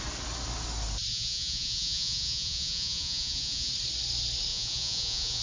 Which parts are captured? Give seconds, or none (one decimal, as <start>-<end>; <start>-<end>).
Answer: 0.0-1.1; 3.7-4.5